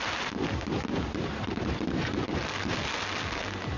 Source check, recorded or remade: recorded